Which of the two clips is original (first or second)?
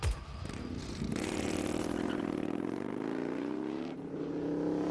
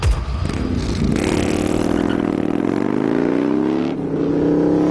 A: second